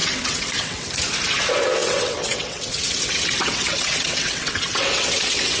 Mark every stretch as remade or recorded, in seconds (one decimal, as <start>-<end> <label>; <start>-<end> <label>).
0.0-0.9 remade; 0.9-1.8 recorded; 1.8-5.6 remade